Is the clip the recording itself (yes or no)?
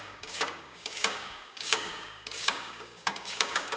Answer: no